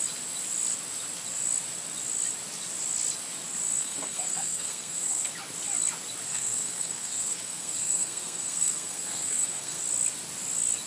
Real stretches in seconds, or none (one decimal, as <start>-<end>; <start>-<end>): 0.0-3.8; 5.3-6.3; 9.8-10.9